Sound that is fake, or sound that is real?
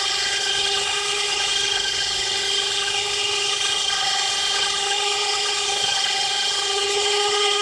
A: fake